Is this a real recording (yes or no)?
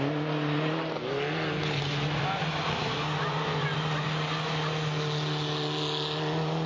yes